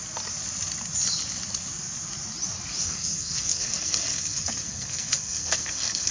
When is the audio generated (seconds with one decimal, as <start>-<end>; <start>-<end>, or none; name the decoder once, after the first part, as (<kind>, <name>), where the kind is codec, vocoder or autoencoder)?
2.8-6.1 (codec, SNAC)